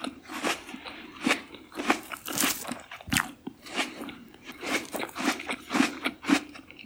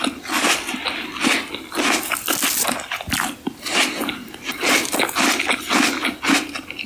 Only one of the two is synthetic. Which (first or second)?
first